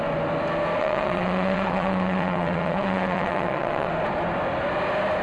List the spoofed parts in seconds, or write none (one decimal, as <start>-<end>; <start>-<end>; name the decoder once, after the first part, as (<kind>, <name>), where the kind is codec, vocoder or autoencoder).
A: 0.8-3.9 (vocoder, WaveNeXt)

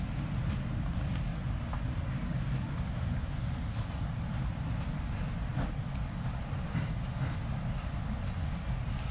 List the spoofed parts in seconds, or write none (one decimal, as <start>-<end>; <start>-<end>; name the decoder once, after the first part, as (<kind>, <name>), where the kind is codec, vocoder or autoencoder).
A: none

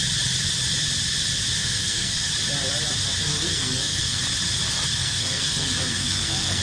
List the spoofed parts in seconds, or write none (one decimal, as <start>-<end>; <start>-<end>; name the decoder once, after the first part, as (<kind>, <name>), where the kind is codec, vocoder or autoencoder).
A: 1.6-2.3 (codec, SNAC); 3.3-4.2; 5.0-6.6

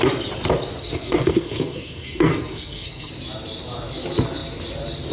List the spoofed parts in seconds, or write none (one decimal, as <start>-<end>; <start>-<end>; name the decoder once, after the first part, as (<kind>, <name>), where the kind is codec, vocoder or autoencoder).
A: 0.8-3.1 (codec, SNAC)

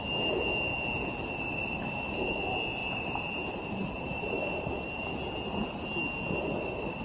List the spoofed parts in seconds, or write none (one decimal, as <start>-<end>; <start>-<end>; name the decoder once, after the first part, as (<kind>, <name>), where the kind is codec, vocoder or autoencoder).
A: 1.5-2.4 (vocoder, BigVGAN v2); 2.8-5.1

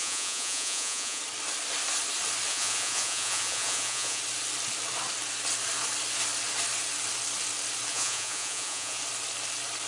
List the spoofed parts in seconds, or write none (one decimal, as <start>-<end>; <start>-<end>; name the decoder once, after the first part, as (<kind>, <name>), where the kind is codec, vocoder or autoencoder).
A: 0.0-1.2 (vocoder, Vocos); 2.5-4.2; 7.9-9.0

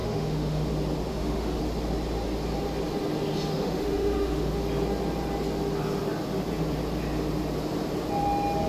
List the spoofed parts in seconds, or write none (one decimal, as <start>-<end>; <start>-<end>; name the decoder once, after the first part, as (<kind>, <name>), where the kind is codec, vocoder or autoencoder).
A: 0.0-0.7 (autoencoder, DAC-VAE); 1.1-1.6; 3.5-4.5